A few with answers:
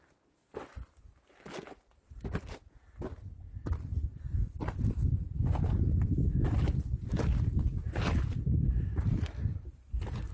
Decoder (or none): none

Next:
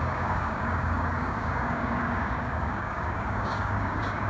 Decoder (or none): codec, DAC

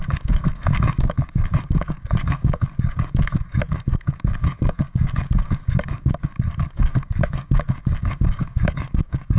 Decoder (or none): codec, DAC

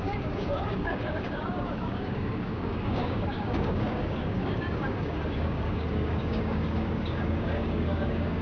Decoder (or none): codec, DAC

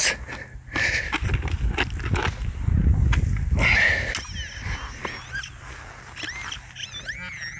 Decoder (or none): none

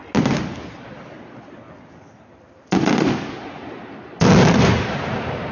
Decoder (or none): none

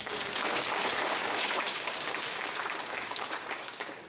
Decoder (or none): codec, DAC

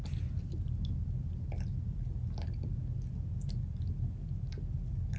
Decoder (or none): none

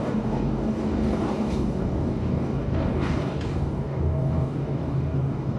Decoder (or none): codec, DAC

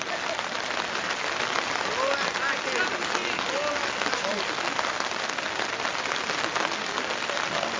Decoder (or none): none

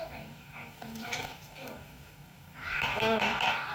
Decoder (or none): codec, DAC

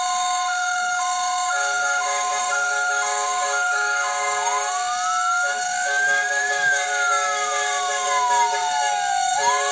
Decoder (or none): codec, DAC